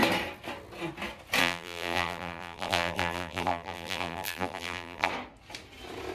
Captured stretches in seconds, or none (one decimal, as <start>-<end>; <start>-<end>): 0.0-1.4; 5.1-6.1